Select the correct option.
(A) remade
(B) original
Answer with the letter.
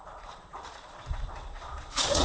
A